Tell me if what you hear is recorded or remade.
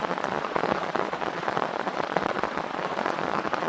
remade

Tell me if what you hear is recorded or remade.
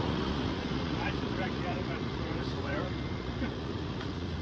remade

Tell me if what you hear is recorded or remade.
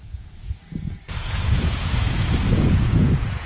remade